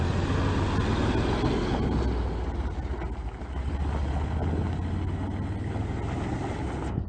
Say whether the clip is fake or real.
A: real